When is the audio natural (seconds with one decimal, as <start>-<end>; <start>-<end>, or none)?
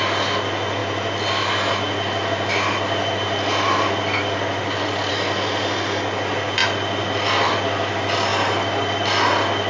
0.0-9.7